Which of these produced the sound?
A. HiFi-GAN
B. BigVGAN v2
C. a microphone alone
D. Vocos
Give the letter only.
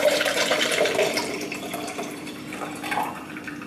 B